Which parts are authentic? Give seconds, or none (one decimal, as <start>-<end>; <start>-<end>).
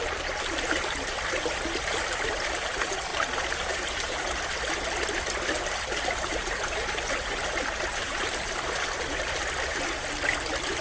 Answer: 0.0-10.8